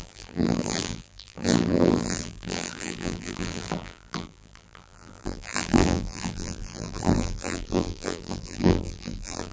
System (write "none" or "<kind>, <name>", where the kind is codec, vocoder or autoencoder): vocoder, BigVGAN v2